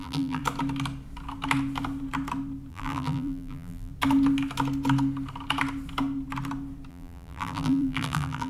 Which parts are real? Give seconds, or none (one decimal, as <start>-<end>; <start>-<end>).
0.4-2.7; 3.9-6.9

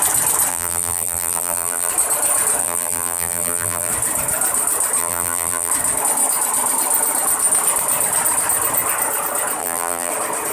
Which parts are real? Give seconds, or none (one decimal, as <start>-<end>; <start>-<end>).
0.0-0.5; 1.9-2.6; 3.9-5.0; 5.7-9.6; 10.1-10.5